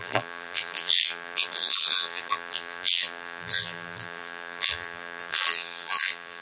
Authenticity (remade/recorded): remade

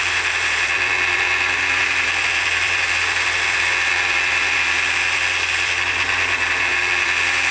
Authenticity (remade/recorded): remade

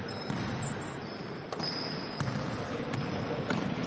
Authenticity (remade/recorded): remade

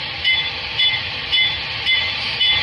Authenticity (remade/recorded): recorded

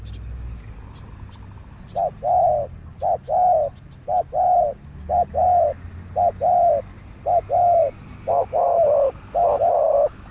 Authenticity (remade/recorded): recorded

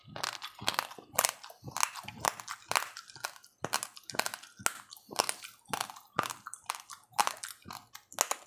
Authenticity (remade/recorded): recorded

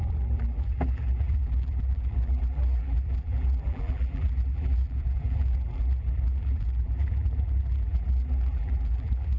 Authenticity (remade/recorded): remade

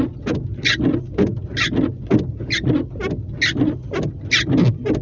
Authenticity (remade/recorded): recorded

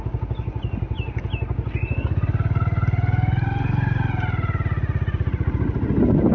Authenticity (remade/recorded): recorded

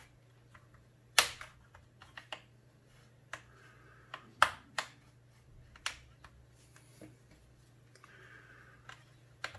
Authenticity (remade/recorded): recorded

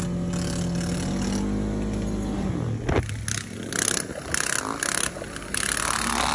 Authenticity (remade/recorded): recorded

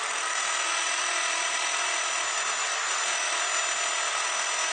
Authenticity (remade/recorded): recorded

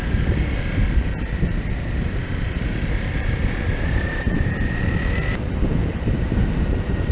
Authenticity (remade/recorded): remade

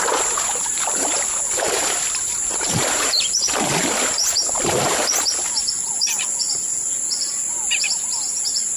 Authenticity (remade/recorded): remade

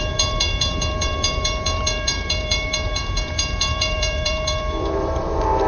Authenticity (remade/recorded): remade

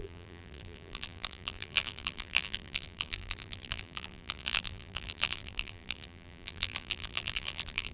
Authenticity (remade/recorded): remade